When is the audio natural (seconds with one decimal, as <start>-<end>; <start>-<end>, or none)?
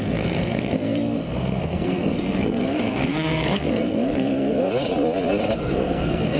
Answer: 4.7-5.6